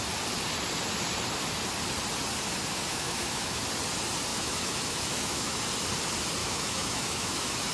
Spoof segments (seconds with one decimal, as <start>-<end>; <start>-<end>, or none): 2.9-3.6; 4.3-5.6; 6.4-7.7